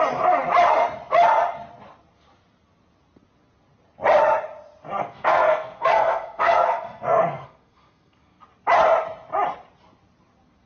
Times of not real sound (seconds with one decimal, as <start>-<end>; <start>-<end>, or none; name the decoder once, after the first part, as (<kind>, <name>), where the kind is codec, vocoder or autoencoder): 5.0-8.4 (codec, SNAC)